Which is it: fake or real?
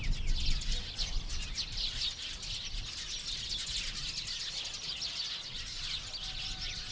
real